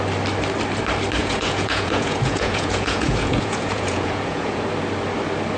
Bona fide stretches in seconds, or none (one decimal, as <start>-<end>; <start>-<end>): 0.0-1.2; 4.6-5.6